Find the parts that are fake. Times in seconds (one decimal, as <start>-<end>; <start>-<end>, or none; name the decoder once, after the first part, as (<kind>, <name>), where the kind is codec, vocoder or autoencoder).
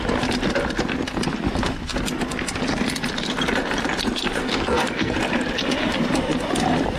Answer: 4.4-5.1 (codec, SNAC)